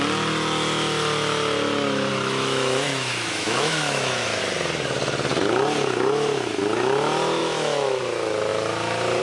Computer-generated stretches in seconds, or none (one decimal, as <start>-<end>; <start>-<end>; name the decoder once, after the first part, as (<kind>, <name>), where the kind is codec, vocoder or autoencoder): 2.1-4.4 (autoencoder, DAC-VAE); 7.4-8.0